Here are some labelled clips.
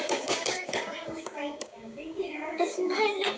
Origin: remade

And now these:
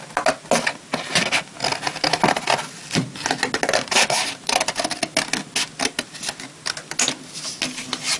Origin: recorded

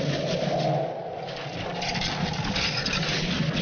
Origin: recorded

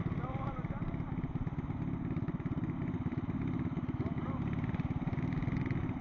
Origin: recorded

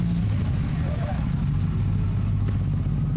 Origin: recorded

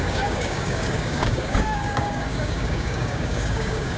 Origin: remade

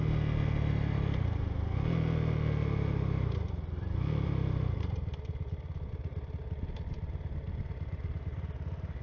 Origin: recorded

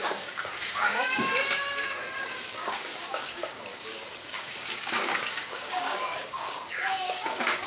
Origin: remade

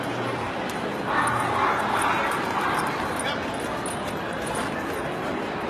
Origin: recorded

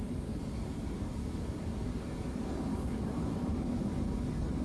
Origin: remade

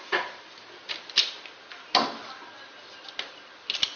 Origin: recorded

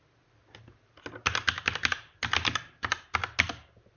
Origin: recorded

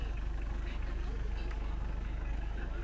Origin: remade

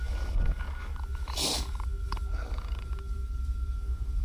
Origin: remade